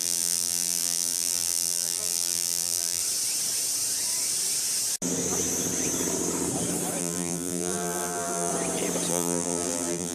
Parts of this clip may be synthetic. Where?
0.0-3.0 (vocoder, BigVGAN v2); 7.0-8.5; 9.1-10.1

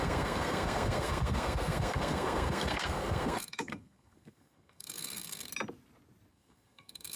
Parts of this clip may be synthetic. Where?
0.0-5.5 (codec, SNAC); 6.3-7.2

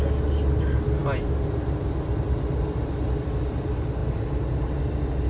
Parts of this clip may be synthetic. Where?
none

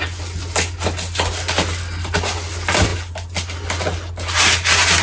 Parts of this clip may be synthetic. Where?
none

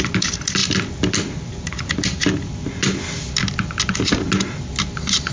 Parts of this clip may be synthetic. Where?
none

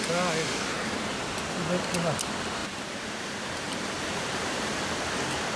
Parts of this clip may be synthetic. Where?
2.6-4.8 (vocoder, BigVGAN v2)